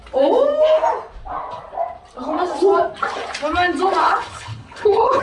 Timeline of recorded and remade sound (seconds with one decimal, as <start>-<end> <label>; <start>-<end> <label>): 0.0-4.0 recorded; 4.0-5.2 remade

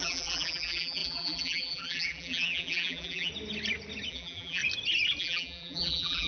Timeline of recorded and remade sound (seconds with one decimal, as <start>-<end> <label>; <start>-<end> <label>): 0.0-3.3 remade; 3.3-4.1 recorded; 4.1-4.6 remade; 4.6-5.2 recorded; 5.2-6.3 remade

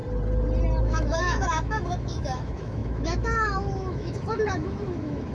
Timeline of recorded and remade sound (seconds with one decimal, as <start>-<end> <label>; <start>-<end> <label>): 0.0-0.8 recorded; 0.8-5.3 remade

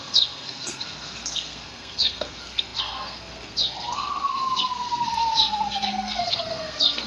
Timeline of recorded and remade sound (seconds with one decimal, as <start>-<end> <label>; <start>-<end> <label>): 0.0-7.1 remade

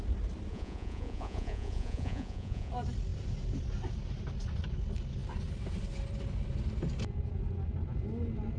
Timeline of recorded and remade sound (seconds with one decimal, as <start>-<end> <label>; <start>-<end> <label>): 0.0-0.5 recorded; 0.5-2.7 remade; 2.7-8.6 recorded

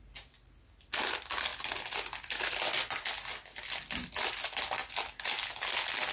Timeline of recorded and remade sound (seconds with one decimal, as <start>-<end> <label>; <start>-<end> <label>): 0.0-6.1 recorded